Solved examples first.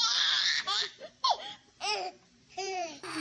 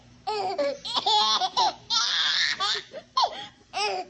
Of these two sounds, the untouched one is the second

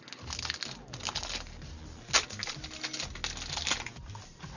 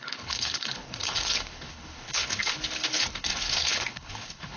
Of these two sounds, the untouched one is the first